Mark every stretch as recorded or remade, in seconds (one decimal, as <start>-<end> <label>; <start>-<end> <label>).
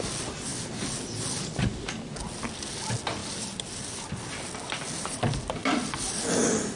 0.0-3.2 recorded; 3.2-4.3 remade; 4.3-5.6 recorded; 5.6-6.2 remade; 6.2-6.8 recorded